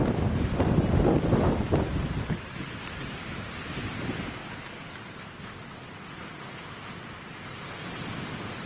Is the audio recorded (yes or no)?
yes